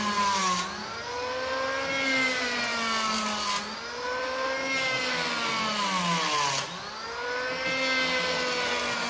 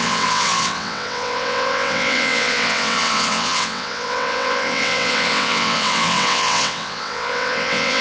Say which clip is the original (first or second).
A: first